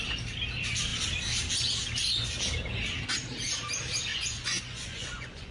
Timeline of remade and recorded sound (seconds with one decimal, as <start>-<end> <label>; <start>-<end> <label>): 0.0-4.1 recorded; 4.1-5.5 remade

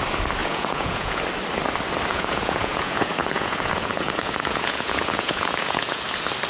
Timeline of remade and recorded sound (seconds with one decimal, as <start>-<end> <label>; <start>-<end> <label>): 0.0-0.4 recorded; 0.4-1.2 remade; 1.2-2.1 recorded; 2.1-6.0 remade; 6.0-6.5 recorded

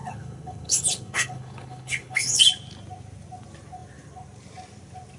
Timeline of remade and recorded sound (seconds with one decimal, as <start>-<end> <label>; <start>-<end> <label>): 0.0-2.4 remade; 2.4-5.2 recorded

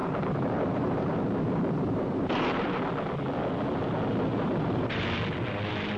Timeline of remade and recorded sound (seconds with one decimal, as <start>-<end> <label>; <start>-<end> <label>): 0.0-2.8 remade; 2.8-4.3 recorded; 4.3-5.0 remade; 5.0-6.0 recorded

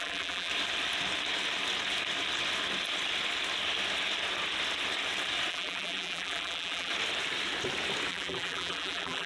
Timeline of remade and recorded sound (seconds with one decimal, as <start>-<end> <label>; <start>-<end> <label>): 0.0-0.5 remade; 0.5-5.5 recorded; 5.5-6.9 remade; 6.9-8.1 recorded; 8.1-9.3 remade

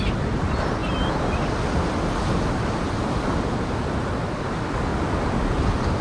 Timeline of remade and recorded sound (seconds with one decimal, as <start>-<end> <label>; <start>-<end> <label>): 0.0-6.0 recorded